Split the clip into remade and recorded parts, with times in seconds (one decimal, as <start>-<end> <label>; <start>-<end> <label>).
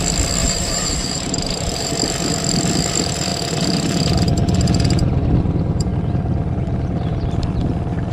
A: 0.0-0.4 recorded; 0.4-1.9 remade; 1.9-8.1 recorded